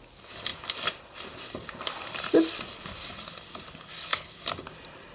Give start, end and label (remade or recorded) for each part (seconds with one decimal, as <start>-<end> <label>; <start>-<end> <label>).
0.0-0.5 recorded; 0.5-3.6 remade; 3.6-4.1 recorded; 4.1-5.1 remade